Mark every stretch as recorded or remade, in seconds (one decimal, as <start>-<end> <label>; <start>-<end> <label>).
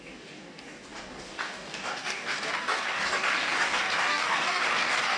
0.0-5.2 remade